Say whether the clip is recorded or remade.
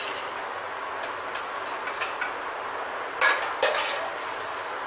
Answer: recorded